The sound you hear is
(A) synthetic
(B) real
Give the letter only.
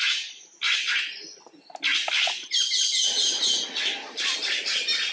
B